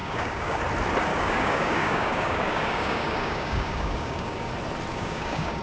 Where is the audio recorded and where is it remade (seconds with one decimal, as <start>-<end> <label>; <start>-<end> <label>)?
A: 0.0-0.6 remade; 0.6-1.1 recorded; 1.1-4.5 remade; 4.5-4.9 recorded; 4.9-5.6 remade